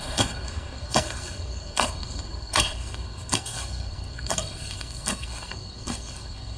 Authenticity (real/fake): fake